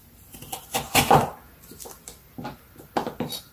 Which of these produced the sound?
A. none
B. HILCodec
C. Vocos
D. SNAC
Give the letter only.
A